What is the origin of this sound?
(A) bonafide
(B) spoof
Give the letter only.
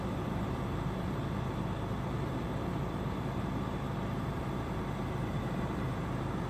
B